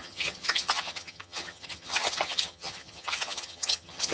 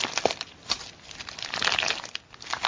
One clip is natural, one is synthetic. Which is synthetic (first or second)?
first